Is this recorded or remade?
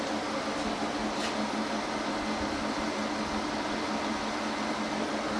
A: recorded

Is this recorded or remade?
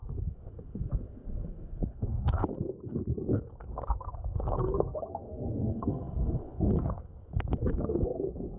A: remade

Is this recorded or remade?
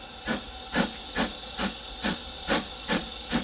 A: recorded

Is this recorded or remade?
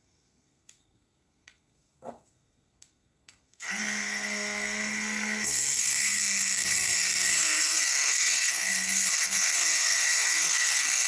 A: remade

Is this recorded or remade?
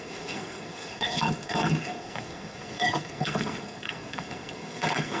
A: remade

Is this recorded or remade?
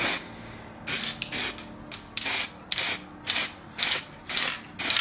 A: recorded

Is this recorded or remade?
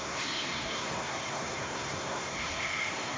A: remade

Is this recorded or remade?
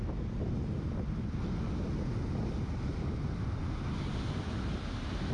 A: recorded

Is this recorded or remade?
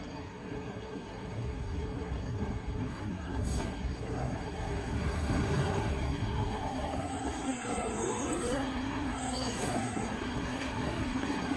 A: remade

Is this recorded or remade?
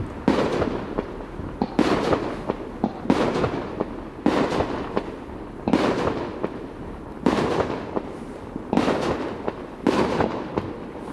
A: recorded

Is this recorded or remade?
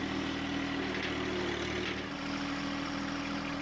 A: recorded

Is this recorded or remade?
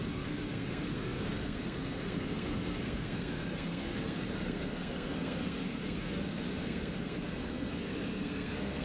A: remade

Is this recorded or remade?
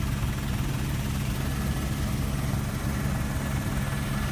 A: recorded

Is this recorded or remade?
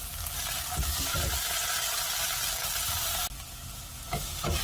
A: recorded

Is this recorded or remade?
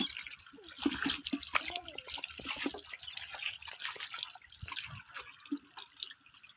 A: recorded